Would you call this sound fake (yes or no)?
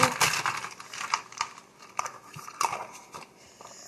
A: yes